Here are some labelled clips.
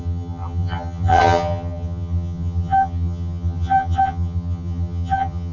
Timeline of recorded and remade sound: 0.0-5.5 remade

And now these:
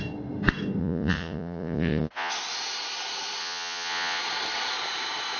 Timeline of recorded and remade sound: 0.0-0.8 recorded; 0.8-2.3 remade; 2.3-3.4 recorded; 3.4-4.2 remade; 4.2-5.4 recorded